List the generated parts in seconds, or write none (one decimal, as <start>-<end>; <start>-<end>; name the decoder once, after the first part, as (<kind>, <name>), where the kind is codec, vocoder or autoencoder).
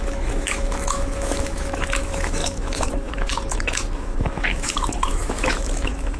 0.0-6.2 (autoencoder, DAC-VAE)